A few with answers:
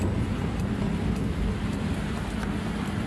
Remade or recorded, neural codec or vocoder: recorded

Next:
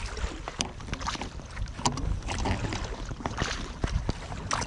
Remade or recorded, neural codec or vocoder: recorded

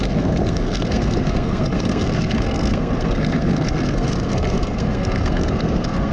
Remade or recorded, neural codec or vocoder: remade, codec, SNAC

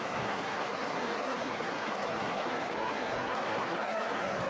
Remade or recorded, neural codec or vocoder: remade, codec, SNAC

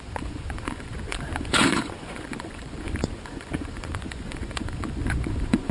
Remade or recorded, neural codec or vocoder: remade, vocoder, Vocos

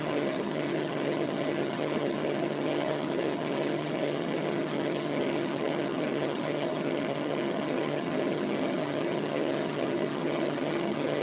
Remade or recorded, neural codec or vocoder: remade, vocoder, HiFi-GAN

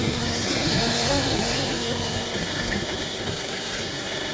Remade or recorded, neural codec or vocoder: remade, codec, SNAC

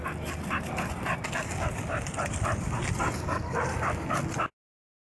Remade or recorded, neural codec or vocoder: recorded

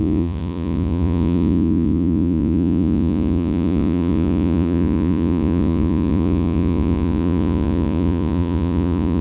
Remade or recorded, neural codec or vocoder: remade, vocoder, Vocos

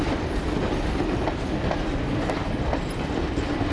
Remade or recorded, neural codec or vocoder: remade, vocoder, BigVGAN v2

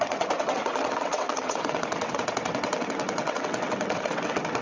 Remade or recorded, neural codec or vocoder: remade, vocoder, WaveNeXt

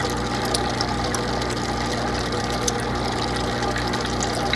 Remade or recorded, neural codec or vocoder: recorded